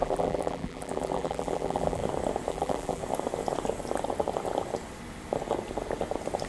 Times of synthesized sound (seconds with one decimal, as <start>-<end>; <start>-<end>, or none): 0.0-2.0; 2.5-3.0